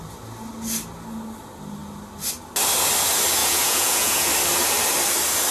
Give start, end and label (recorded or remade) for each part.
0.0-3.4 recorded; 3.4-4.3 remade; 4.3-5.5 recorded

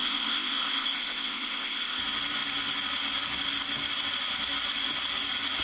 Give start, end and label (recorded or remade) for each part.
0.0-2.0 remade; 2.0-5.6 recorded

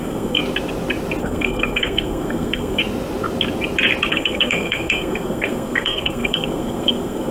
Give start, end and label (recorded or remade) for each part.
0.0-0.4 remade; 0.4-1.2 recorded; 1.2-2.8 remade; 2.8-4.1 recorded; 4.1-7.3 remade

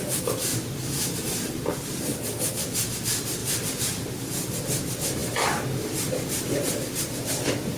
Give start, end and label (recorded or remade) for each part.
0.0-0.5 recorded; 0.5-2.0 remade; 2.0-3.4 recorded; 3.4-4.1 remade; 4.1-7.8 recorded

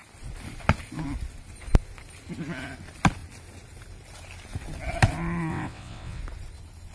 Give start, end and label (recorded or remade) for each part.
0.0-5.5 recorded; 5.5-6.2 remade; 6.2-6.9 recorded

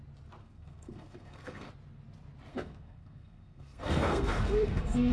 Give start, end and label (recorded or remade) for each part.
0.0-0.4 recorded; 0.4-1.7 remade; 1.7-2.5 recorded; 2.5-5.1 remade